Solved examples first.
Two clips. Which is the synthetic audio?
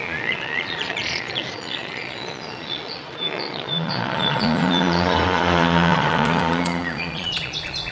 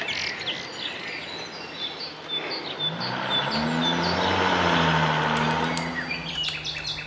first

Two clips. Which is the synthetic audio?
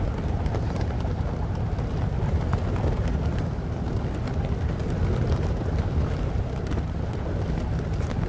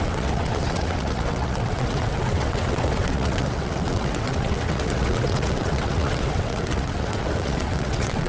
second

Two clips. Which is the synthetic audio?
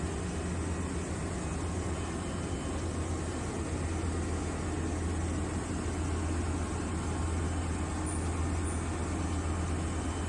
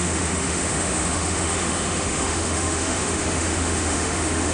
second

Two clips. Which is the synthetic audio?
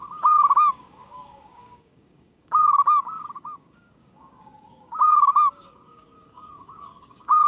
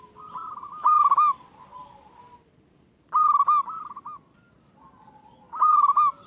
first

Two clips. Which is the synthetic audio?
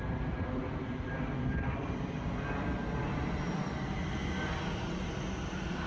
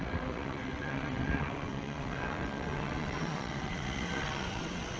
second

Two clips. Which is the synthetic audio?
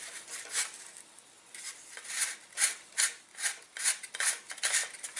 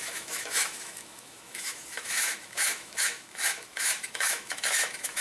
second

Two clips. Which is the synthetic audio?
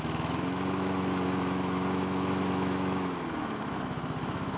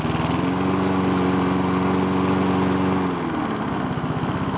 first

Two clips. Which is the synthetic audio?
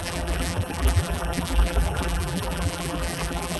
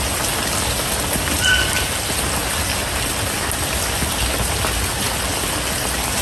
first